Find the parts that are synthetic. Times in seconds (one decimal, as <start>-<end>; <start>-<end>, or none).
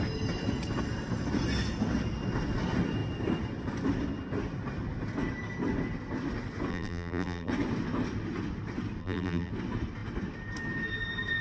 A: 6.7-7.5; 9.0-9.5